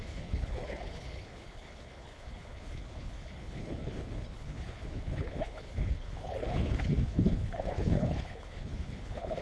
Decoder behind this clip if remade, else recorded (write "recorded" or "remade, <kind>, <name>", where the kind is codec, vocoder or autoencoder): remade, codec, HILCodec